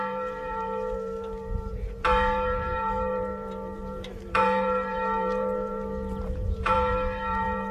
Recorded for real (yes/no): no